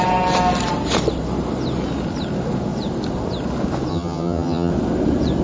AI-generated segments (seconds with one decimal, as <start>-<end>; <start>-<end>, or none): 3.9-4.7